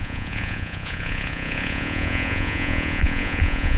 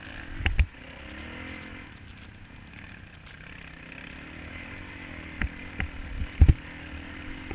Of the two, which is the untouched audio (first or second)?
second